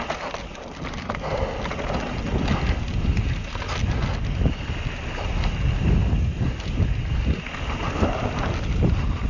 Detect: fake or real real